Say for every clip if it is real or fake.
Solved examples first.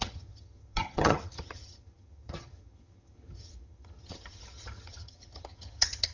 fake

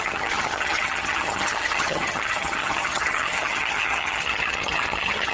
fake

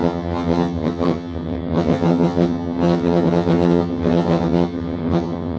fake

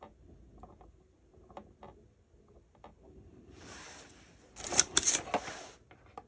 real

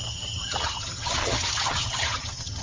fake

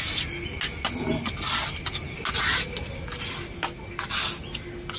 real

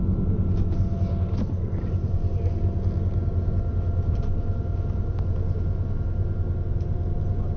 real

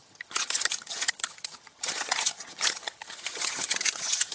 fake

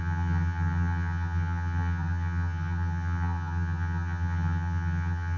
fake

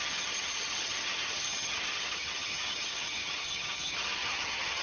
fake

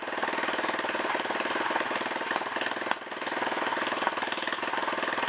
real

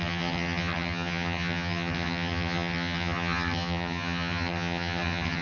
fake